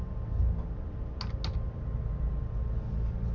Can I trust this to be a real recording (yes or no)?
yes